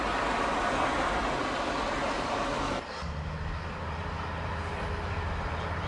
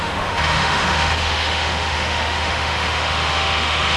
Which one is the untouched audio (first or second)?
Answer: first